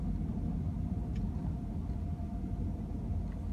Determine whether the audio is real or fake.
real